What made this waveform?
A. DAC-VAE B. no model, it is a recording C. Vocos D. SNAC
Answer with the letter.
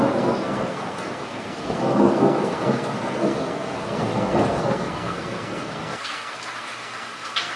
D